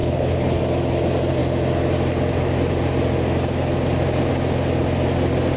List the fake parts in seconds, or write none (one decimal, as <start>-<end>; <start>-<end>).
0.0-0.6